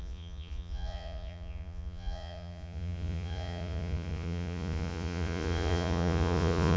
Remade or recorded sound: remade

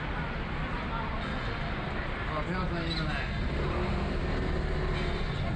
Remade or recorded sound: recorded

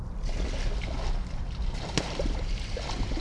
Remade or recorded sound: recorded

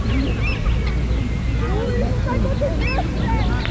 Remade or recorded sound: recorded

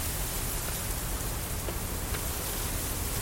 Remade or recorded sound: recorded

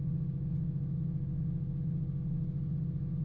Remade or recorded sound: recorded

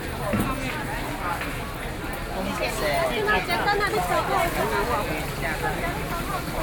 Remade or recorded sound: recorded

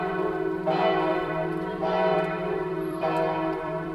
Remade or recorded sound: remade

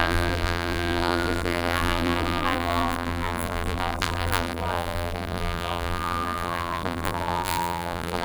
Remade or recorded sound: remade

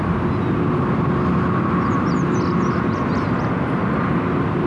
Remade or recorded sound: recorded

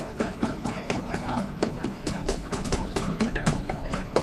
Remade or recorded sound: remade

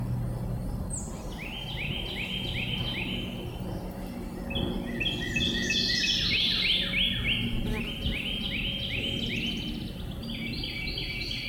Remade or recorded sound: recorded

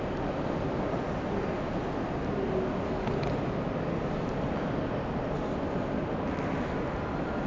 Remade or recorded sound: recorded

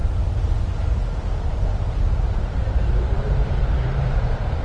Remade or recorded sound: remade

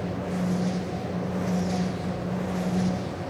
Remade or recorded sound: recorded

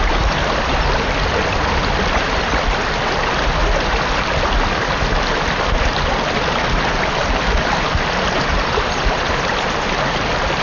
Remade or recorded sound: recorded